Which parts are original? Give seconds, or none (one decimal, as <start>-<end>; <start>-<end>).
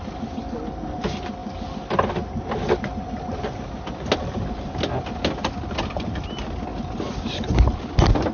0.0-6.7; 7.5-8.3